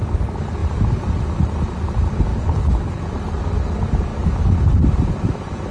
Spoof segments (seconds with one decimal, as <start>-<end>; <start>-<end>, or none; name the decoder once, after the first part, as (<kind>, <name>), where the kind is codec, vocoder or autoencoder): 2.3-3.0 (codec, HILCodec)